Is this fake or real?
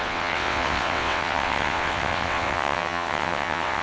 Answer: fake